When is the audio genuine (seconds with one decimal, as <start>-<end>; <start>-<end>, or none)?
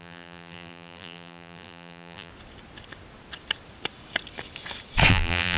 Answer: 2.3-5.1